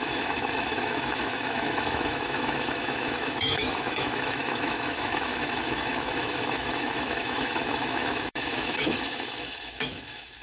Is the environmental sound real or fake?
fake